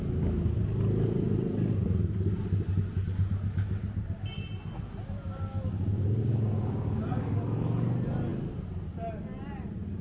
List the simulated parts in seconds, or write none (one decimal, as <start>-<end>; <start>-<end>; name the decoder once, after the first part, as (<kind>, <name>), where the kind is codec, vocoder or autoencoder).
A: 6.2-7.4 (codec, DAC)